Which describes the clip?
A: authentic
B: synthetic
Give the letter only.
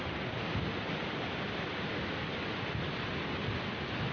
A